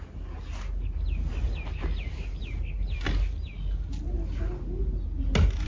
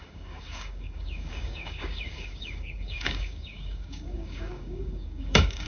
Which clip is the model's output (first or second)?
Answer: second